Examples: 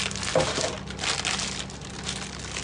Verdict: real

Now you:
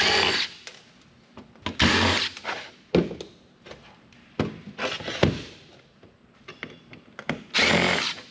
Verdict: real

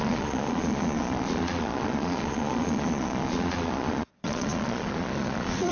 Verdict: fake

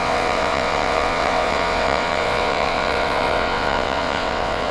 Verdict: fake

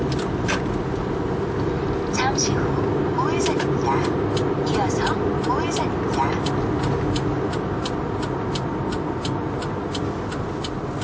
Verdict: real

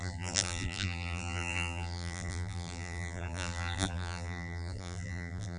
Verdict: fake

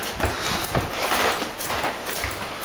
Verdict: fake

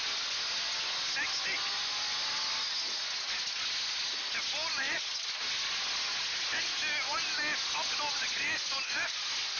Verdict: real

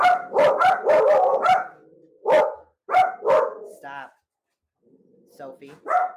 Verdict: real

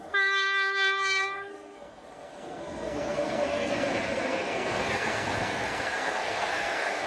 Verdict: fake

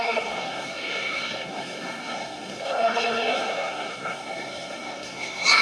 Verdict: fake